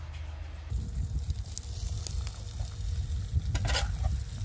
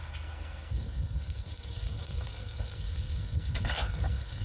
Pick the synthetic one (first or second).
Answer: second